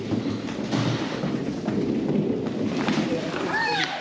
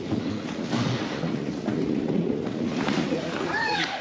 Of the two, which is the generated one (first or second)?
second